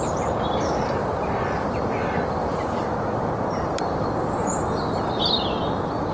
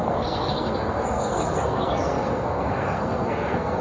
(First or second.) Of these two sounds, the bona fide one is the first